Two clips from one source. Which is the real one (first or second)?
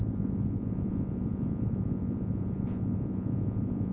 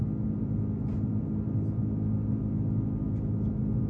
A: second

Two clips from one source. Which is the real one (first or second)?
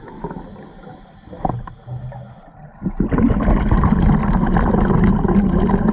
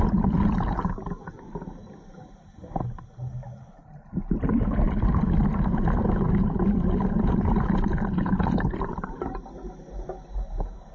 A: first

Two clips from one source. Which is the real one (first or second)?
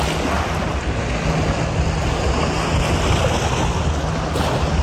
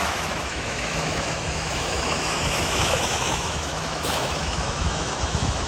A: first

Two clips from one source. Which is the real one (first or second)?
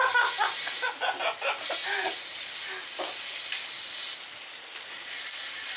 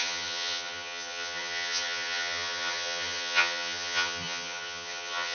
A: first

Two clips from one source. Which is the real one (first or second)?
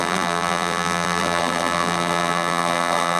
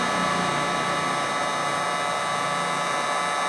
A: second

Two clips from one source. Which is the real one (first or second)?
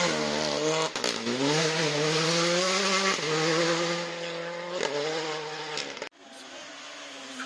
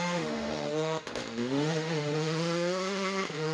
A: first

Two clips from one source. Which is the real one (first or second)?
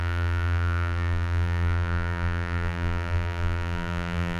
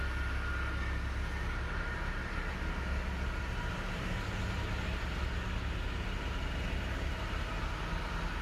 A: second